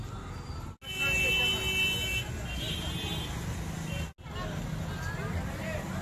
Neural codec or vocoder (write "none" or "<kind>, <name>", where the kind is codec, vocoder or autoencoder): none